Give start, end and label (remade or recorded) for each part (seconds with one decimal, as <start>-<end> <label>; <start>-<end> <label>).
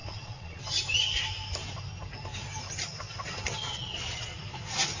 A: 0.0-0.6 remade; 0.6-3.7 recorded; 3.7-4.4 remade; 4.4-5.0 recorded